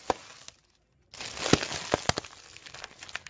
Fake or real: real